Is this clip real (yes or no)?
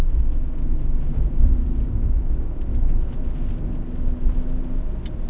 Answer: yes